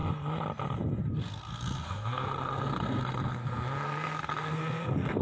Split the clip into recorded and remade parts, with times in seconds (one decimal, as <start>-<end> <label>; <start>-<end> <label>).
0.0-1.1 recorded; 1.1-5.2 remade